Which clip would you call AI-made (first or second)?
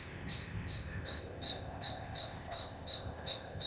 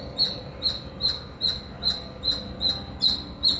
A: first